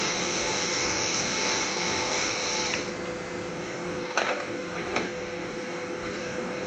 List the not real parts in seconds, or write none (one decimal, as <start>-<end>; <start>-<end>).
0.0-2.5; 3.5-6.7